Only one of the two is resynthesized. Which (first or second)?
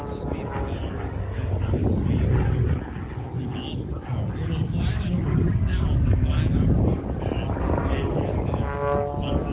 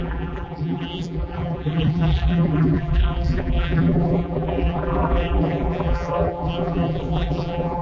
second